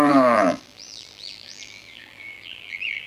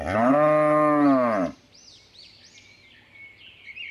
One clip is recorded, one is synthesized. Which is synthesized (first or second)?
first